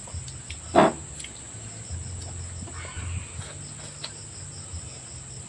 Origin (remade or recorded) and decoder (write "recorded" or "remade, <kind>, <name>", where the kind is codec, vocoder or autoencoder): recorded